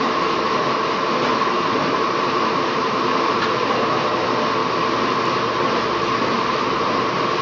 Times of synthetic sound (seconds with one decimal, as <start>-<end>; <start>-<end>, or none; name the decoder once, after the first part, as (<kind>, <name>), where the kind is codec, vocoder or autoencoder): 1.3-3.5 (vocoder, BigVGAN v2); 4.6-7.0